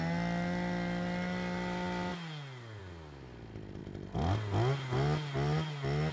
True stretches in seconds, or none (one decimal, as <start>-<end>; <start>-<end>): 0.0-6.1